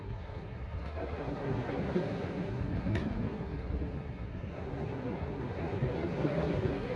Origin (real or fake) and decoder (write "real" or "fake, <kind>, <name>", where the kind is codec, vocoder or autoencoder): fake, codec, SNAC